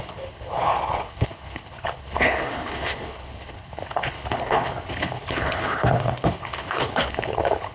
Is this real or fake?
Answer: fake